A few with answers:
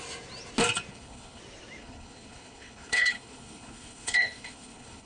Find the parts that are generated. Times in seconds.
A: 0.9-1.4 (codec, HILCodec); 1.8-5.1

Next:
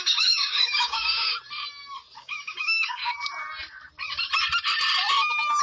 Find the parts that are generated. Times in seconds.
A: 0.0-1.3 (codec, DAC); 2.2-3.0

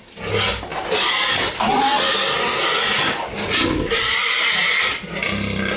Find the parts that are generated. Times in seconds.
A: 0.7-1.4 (vocoder, BigVGAN v2)

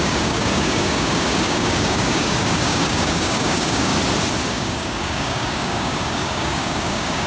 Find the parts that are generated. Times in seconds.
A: 0.0-3.9 (codec, DAC); 4.5-7.3

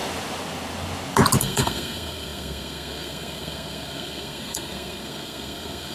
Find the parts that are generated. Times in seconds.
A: 1.4-5.9 (codec, SNAC)

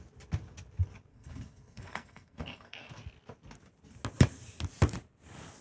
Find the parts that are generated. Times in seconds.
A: 1.1-2.9 (codec, SNAC)